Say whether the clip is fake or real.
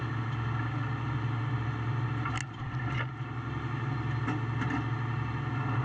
real